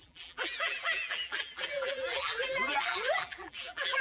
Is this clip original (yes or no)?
no